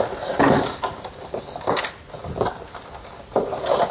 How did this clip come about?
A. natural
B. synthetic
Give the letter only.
A